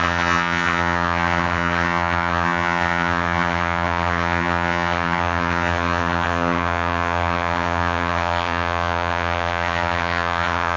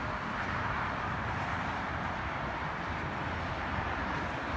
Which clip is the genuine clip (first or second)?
second